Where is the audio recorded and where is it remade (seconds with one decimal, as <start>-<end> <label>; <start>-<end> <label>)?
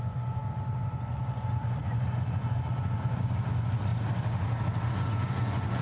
0.0-0.4 remade; 0.4-0.9 recorded; 0.9-3.9 remade; 3.9-4.9 recorded; 4.9-5.8 remade